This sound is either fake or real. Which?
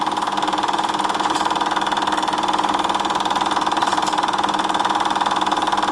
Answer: real